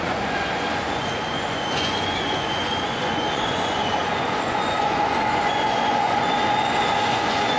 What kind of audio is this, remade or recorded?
remade